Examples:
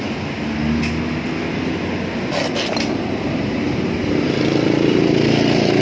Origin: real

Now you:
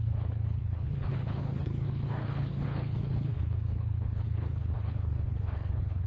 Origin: fake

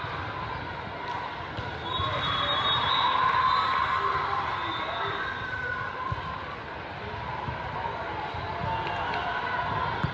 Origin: real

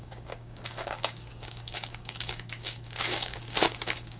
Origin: fake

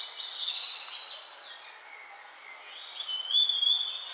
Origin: real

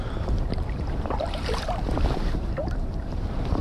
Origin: fake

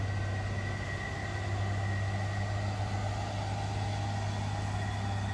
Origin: real